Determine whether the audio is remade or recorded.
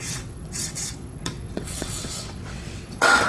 remade